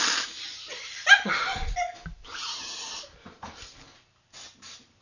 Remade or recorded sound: recorded